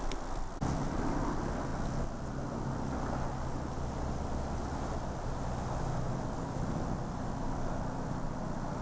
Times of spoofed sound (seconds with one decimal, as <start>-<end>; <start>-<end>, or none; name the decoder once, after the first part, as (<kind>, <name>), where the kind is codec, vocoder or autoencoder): none